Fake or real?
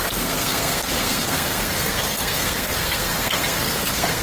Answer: fake